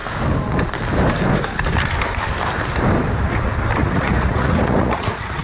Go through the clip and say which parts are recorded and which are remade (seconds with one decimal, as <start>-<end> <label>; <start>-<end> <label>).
0.0-3.8 recorded; 3.8-5.4 remade